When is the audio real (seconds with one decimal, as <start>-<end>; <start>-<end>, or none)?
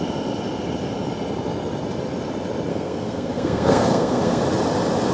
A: 0.0-2.7; 4.4-5.1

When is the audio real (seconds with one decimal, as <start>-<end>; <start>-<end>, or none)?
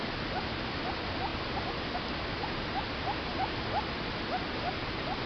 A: 0.0-5.3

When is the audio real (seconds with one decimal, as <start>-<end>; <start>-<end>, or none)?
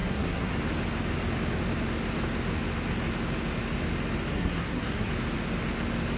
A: 0.5-4.3; 5.1-6.2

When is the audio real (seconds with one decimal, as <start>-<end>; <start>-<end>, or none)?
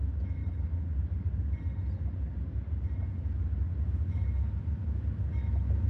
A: 0.4-3.8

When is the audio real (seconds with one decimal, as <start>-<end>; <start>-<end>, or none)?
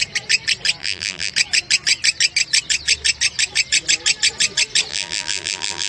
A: 0.0-0.8; 1.3-4.9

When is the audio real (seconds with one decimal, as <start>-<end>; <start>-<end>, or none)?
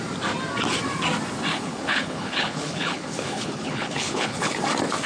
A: 0.0-1.5; 4.6-5.1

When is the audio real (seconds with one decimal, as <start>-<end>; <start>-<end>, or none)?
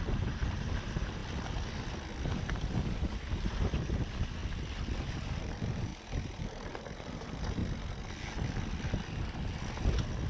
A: 1.2-2.2; 4.4-5.0; 5.9-6.4; 7.6-10.3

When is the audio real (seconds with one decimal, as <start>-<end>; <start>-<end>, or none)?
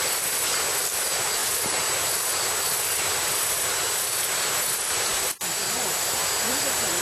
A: 0.0-1.4; 2.1-7.0